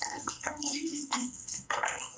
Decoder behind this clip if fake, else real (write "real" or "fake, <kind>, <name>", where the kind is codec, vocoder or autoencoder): fake, codec, SNAC